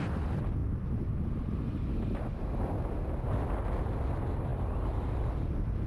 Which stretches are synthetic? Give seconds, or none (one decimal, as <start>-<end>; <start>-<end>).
0.6-1.7